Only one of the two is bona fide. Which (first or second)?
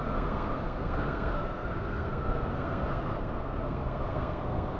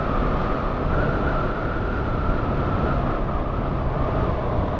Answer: second